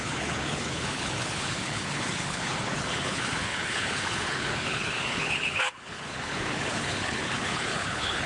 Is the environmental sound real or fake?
fake